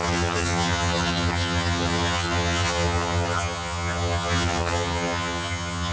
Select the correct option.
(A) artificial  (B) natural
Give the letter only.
A